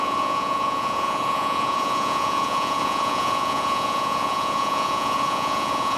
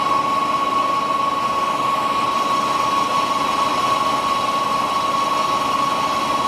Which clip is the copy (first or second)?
first